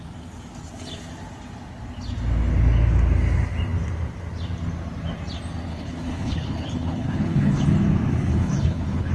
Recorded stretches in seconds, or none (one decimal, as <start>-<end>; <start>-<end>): 0.0-5.7; 7.6-8.3